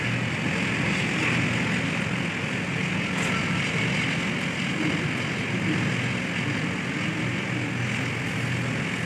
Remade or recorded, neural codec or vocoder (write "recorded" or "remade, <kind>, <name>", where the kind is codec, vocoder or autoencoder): recorded